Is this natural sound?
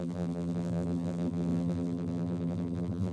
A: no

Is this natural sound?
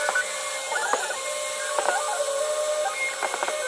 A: yes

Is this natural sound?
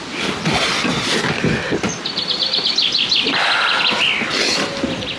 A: yes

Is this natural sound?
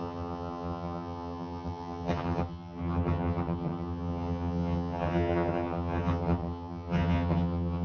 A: no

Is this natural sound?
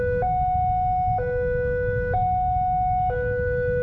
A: yes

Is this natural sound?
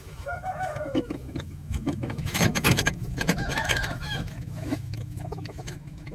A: no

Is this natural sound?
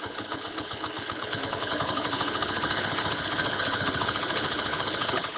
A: no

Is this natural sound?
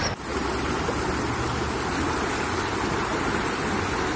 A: yes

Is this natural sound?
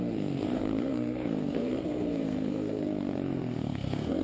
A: no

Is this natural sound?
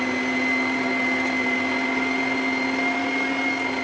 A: yes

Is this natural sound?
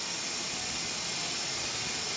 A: yes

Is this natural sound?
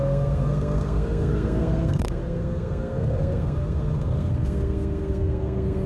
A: no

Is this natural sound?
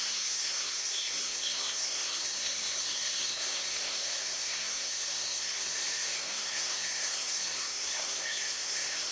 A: no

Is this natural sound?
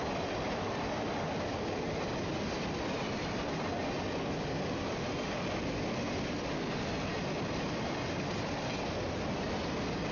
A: yes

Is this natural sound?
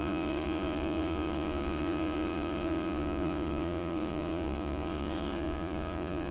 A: no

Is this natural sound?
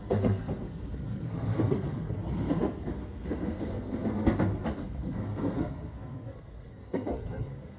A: no